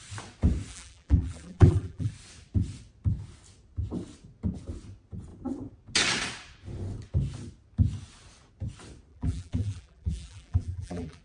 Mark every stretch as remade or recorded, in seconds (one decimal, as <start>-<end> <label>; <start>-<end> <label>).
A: 0.0-0.7 recorded; 0.7-2.1 remade; 2.1-9.1 recorded; 9.1-11.2 remade